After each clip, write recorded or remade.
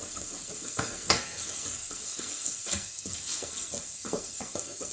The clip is remade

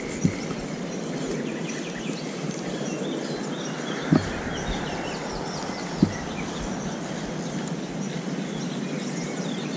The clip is recorded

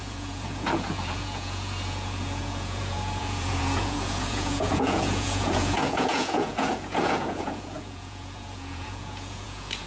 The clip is remade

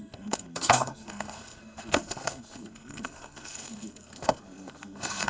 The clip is remade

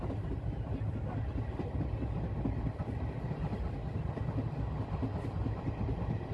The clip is recorded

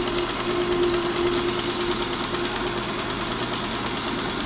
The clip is recorded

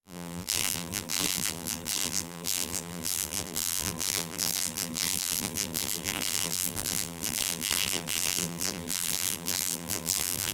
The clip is remade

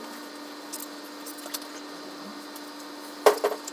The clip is recorded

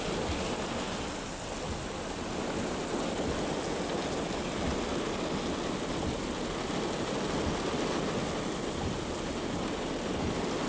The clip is recorded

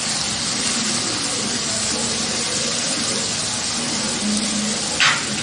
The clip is recorded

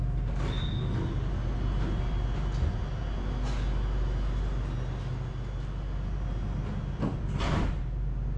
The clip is recorded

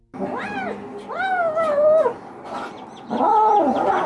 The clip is recorded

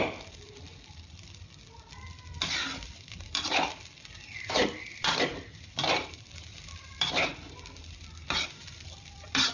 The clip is remade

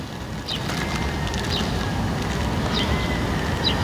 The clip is recorded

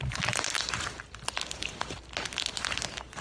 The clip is recorded